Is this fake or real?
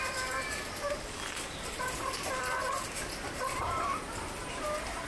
fake